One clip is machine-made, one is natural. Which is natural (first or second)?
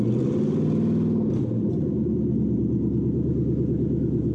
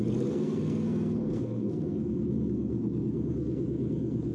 first